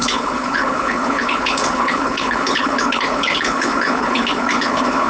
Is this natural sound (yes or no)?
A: no